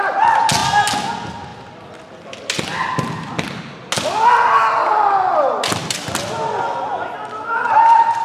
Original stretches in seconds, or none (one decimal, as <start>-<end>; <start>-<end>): 0.0-8.2